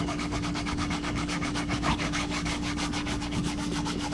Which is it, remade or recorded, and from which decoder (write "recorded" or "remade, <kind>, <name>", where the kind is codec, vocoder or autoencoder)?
remade, codec, DAC